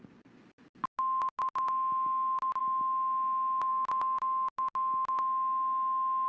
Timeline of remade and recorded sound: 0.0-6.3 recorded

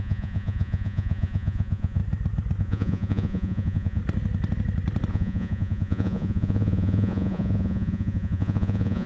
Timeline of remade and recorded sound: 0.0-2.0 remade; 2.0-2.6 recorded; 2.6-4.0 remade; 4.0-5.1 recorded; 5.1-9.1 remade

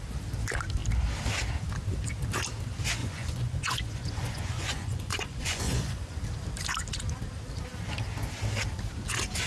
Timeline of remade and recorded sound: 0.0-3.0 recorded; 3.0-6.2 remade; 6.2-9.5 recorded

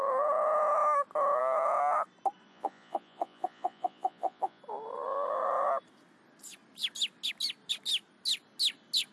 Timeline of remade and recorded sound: 0.0-2.5 recorded; 2.5-4.6 remade; 4.6-9.1 recorded